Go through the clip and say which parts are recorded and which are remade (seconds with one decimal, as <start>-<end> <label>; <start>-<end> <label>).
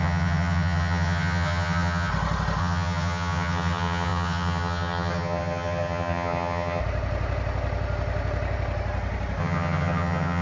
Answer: 0.0-2.1 remade; 2.1-2.6 recorded; 2.6-6.8 remade; 6.8-9.4 recorded; 9.4-10.4 remade